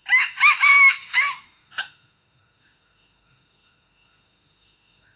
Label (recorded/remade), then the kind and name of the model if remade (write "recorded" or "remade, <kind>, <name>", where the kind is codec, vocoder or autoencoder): remade, autoencoder, DAC-VAE